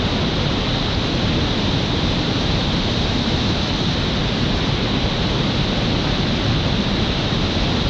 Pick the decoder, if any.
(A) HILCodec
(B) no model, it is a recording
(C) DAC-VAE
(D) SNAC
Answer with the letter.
B